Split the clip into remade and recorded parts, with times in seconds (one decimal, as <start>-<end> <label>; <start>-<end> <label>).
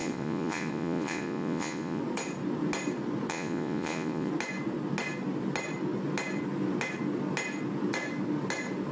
0.0-2.0 remade; 2.0-3.3 recorded; 3.3-4.3 remade; 4.3-8.9 recorded